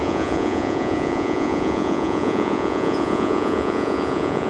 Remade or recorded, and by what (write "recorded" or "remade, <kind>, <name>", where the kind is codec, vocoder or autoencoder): remade, vocoder, Vocos